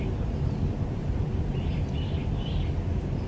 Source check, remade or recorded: recorded